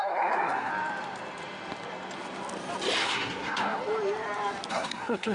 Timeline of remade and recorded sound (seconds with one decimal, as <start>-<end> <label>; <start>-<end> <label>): 0.0-0.7 remade; 0.7-3.0 recorded; 3.0-3.8 remade; 3.8-4.7 recorded; 4.7-5.3 remade